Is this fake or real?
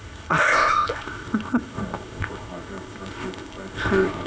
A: fake